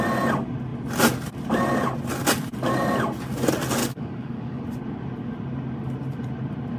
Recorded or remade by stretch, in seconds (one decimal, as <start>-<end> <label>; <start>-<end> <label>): 0.0-3.8 recorded; 3.8-4.6 remade; 4.6-6.8 recorded